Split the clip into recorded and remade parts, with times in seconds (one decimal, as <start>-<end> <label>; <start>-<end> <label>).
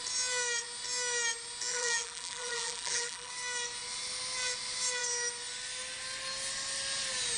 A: 0.0-1.7 recorded; 1.7-3.3 remade; 3.3-7.4 recorded